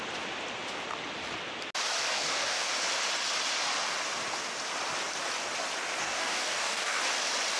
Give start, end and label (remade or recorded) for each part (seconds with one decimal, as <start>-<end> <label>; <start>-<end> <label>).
0.0-2.0 recorded; 2.0-2.7 remade; 2.7-6.0 recorded; 6.0-7.0 remade; 7.0-7.6 recorded